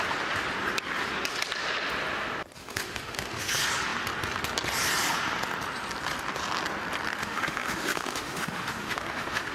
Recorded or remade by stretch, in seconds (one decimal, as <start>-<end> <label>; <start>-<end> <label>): 0.0-2.6 recorded; 2.6-3.5 remade; 3.5-7.2 recorded; 7.2-9.5 remade